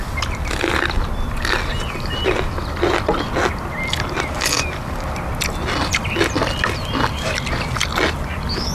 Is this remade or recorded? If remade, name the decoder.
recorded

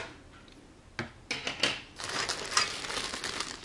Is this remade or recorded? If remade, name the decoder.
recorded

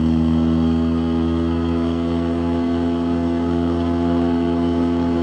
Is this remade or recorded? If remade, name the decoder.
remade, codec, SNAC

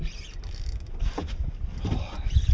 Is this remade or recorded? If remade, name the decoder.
recorded